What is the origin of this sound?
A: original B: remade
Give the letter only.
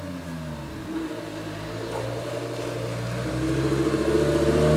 A